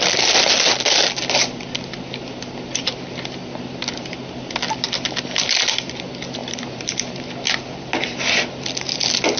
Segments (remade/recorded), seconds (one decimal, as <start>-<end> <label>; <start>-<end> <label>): 0.0-6.4 recorded; 6.4-7.3 remade; 7.3-9.4 recorded